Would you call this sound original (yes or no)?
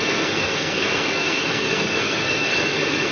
no